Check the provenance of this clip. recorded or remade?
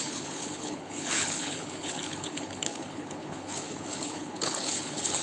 remade